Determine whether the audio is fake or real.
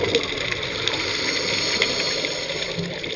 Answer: real